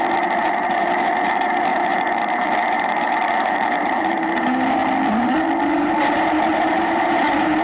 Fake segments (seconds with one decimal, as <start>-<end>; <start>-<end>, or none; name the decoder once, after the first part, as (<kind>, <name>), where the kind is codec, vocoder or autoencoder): 0.0-4.8 (vocoder, BigVGAN v2); 5.6-7.6